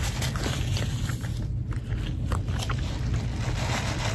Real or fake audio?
real